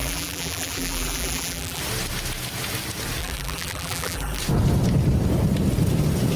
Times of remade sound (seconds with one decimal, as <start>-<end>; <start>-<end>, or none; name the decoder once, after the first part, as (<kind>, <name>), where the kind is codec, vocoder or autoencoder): 0.0-1.8 (vocoder, BigVGAN v2); 3.2-4.4